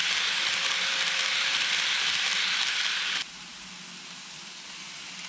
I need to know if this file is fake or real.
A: real